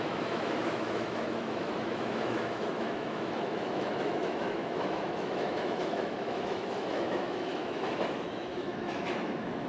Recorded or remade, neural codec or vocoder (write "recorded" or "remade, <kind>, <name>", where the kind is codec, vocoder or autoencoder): remade, autoencoder, DAC-VAE